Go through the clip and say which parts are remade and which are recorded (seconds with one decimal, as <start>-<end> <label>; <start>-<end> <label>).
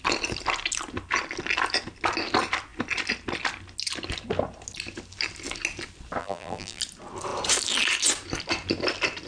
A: 0.0-6.2 recorded; 6.2-6.8 remade; 6.8-9.3 recorded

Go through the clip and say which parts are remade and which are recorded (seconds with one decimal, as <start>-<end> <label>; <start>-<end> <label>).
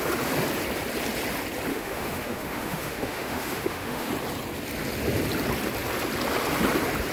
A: 0.0-1.7 recorded; 1.7-4.1 remade; 4.1-7.1 recorded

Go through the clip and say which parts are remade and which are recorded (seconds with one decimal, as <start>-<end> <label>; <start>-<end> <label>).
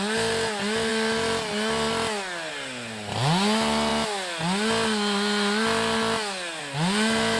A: 0.0-7.4 recorded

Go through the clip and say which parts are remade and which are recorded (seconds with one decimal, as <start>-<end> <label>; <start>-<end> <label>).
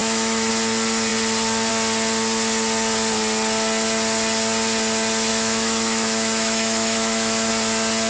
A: 0.0-0.5 remade; 0.5-5.3 recorded; 5.3-7.5 remade; 7.5-8.1 recorded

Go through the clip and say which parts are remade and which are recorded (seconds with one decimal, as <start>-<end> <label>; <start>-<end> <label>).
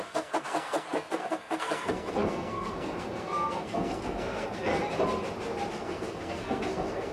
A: 0.0-4.7 remade; 4.7-5.7 recorded; 5.7-7.1 remade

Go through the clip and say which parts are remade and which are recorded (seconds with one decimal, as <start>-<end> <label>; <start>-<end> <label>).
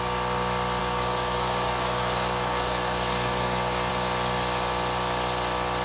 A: 0.0-0.8 recorded; 0.8-3.9 remade; 3.9-5.8 recorded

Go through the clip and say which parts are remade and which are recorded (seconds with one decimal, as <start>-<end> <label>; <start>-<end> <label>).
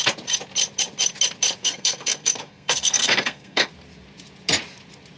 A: 0.0-1.6 recorded; 1.6-3.7 remade; 3.7-5.2 recorded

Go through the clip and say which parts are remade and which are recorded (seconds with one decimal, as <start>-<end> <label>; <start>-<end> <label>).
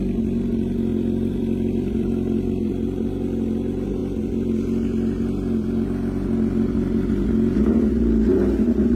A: 0.0-0.9 recorded; 0.9-3.1 remade; 3.1-9.0 recorded